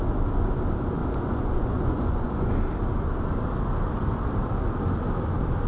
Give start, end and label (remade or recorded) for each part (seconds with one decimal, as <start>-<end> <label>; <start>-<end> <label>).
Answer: 0.0-1.0 recorded; 1.0-2.5 remade; 2.5-5.7 recorded